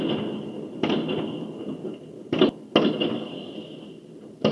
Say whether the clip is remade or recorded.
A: recorded